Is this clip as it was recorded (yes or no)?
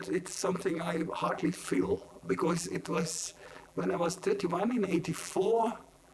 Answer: no